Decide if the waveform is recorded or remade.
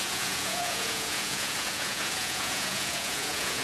remade